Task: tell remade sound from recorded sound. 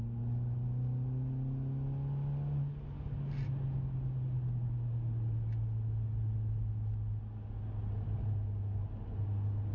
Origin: recorded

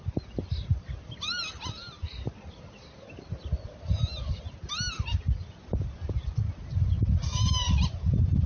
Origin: recorded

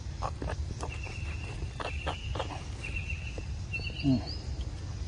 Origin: recorded